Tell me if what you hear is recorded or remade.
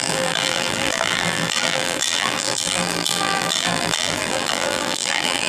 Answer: remade